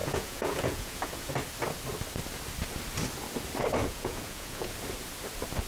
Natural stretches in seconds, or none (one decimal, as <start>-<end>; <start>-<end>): 1.3-3.8; 4.7-5.7